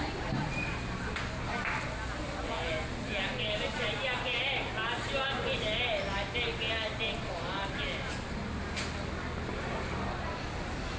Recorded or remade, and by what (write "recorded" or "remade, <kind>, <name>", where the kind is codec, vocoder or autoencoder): recorded